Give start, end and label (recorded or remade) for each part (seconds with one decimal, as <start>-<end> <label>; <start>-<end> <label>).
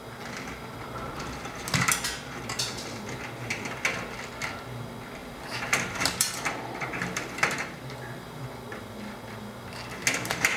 0.0-5.2 recorded; 5.2-8.4 remade; 8.4-10.6 recorded